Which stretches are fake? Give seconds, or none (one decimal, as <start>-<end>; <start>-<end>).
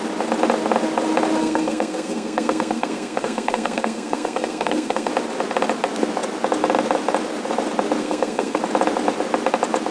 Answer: 1.4-5.1; 8.0-8.6